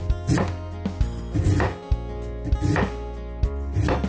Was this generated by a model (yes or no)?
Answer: no